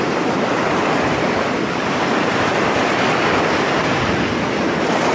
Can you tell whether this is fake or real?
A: real